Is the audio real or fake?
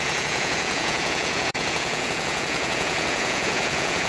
fake